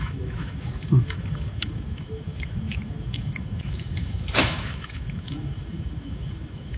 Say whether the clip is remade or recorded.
remade